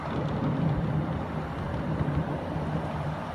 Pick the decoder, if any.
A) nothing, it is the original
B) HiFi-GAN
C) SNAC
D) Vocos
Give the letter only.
A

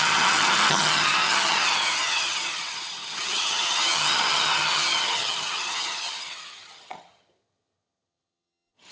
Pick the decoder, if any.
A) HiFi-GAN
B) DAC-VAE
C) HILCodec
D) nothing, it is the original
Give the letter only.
A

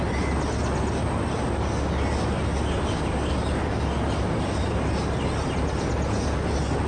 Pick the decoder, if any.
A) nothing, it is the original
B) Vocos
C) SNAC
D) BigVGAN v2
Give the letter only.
A